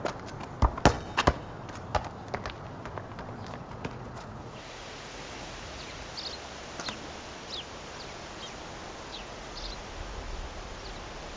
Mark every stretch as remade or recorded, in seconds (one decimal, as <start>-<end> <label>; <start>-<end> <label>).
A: 0.0-3.6 recorded; 3.6-6.1 remade; 6.1-9.1 recorded; 9.1-9.9 remade; 9.9-11.4 recorded